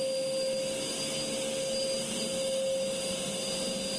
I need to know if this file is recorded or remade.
recorded